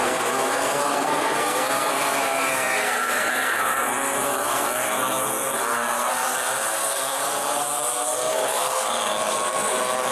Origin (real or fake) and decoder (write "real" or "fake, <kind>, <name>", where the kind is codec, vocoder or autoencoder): fake, codec, SNAC